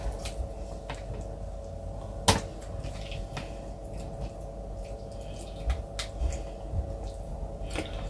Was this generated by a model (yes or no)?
no